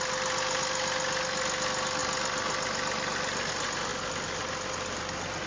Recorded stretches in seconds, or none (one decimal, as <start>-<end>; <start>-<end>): 0.0-5.5